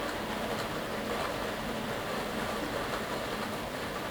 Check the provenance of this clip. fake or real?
real